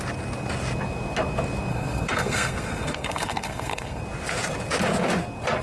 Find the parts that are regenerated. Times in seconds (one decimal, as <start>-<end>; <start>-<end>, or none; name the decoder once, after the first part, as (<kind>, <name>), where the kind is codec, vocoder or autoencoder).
1.7-4.0 (codec, SNAC)